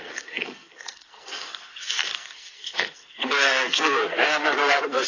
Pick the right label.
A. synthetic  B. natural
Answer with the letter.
A